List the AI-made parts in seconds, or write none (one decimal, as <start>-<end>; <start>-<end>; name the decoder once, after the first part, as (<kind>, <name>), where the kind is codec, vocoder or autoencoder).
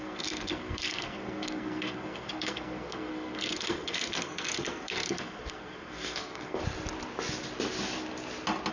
0.0-6.6 (codec, SNAC)